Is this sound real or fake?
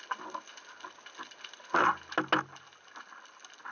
real